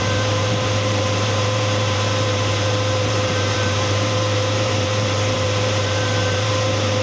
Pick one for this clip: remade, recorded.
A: remade